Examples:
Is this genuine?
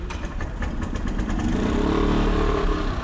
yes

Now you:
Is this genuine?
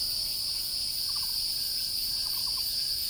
yes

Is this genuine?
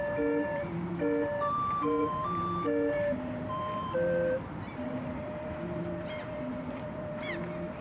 no